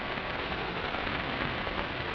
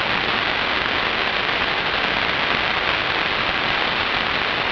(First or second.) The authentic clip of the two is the second